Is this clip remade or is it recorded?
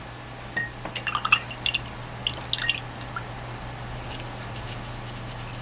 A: recorded